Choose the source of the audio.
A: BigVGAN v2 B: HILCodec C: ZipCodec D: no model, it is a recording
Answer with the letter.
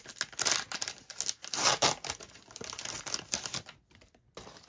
D